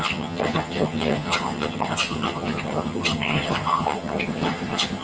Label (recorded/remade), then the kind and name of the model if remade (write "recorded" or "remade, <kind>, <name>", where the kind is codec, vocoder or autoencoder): remade, vocoder, HiFi-GAN